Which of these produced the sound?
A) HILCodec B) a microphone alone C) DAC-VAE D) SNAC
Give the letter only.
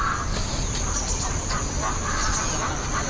B